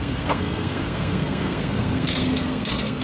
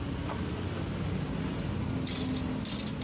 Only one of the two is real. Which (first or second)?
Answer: second